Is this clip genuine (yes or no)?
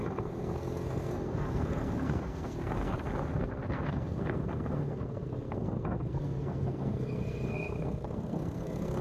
no